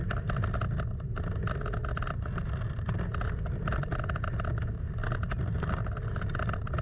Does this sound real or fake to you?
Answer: real